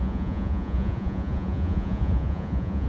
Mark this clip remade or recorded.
remade